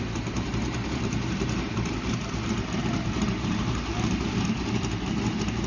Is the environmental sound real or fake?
fake